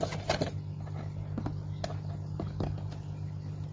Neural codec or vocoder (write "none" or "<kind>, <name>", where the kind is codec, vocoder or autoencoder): none